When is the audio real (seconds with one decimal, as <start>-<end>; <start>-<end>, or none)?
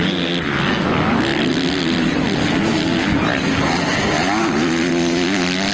0.0-5.7